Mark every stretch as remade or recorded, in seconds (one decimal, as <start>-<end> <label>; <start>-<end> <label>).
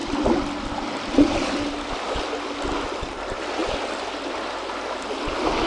0.0-5.7 recorded